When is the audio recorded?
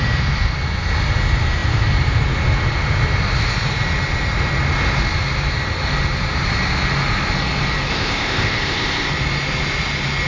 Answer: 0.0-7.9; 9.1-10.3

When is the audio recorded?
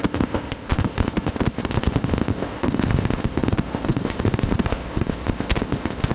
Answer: none